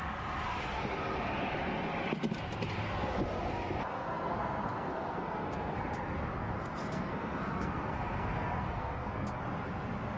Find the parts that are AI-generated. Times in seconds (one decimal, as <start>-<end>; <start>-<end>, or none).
3.9-5.9; 6.4-9.4